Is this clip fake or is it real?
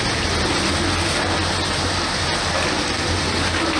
real